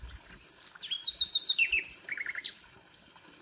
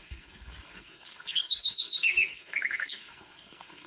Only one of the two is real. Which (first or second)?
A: first